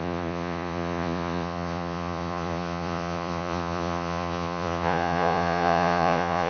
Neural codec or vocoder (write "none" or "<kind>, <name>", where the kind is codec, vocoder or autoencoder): vocoder, Vocos